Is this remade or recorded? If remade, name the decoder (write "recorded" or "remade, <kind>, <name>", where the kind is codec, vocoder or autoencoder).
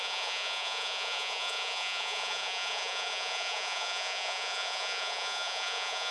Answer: remade, vocoder, Vocos